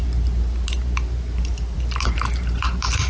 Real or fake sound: fake